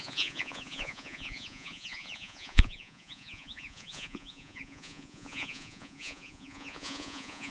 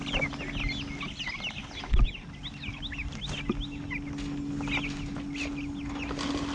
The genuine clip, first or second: second